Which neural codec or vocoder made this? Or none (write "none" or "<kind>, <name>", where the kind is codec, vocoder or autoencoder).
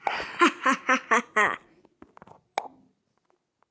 none